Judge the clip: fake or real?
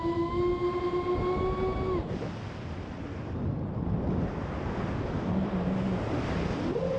real